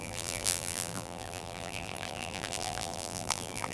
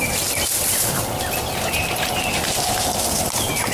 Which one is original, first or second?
second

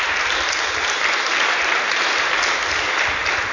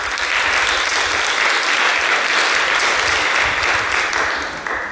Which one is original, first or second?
second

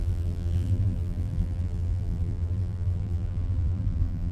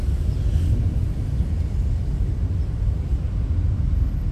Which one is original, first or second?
second